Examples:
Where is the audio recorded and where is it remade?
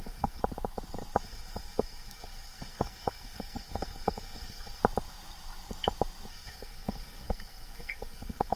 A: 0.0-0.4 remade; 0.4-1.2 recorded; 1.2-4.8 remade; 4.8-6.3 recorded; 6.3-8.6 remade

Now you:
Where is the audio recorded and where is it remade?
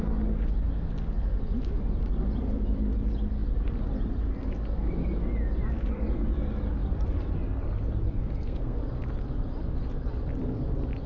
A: 0.0-8.2 recorded; 8.2-8.8 remade; 8.8-11.1 recorded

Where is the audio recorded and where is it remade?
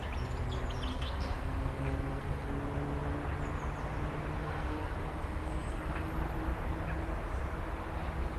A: 0.0-0.9 recorded; 0.9-2.5 remade; 2.5-4.4 recorded; 4.4-6.1 remade; 6.1-8.4 recorded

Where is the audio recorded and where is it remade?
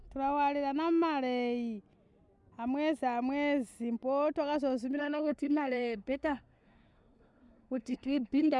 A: 0.0-5.0 recorded; 5.0-8.6 remade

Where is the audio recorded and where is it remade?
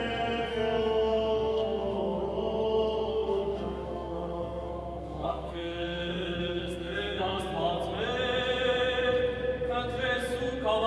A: 0.0-0.5 recorded; 0.5-2.2 remade; 2.2-3.1 recorded; 3.1-7.4 remade; 7.4-10.9 recorded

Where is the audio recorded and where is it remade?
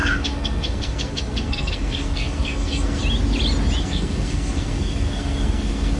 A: 0.0-3.0 remade; 3.0-3.8 recorded; 3.8-6.0 remade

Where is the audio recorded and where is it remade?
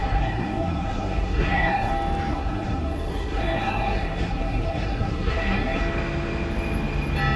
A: 0.0-1.9 remade; 1.9-2.3 recorded; 2.3-5.8 remade; 5.8-7.4 recorded